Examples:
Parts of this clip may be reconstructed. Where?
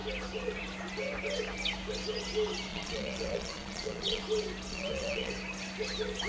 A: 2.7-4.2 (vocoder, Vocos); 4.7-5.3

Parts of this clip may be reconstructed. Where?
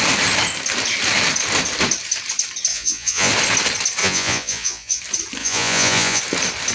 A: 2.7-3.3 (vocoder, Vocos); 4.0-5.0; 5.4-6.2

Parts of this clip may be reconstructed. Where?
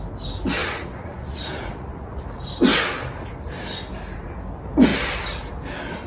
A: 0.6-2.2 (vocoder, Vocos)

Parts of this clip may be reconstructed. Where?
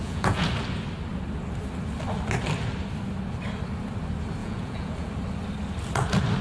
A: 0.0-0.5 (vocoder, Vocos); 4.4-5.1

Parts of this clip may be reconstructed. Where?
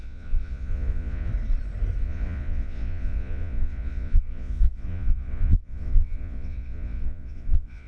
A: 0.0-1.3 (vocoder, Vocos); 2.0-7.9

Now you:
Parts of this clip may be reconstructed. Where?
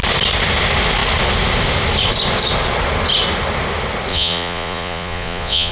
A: 4.1-5.7 (vocoder, Vocos)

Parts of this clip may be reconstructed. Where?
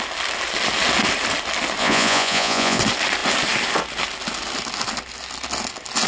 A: 1.8-2.8 (vocoder, Vocos)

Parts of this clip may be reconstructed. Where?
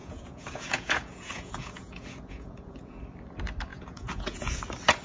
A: 0.0-3.0 (vocoder, Vocos); 3.7-4.6